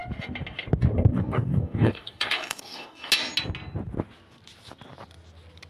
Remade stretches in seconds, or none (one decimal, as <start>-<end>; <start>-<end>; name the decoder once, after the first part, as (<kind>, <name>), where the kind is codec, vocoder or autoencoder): 1.1-3.1 (codec, DAC)